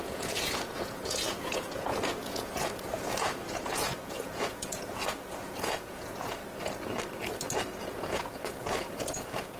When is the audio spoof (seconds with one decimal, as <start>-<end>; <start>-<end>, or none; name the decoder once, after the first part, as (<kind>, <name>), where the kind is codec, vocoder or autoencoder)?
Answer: 0.0-6.4 (vocoder, Vocos); 7.7-9.6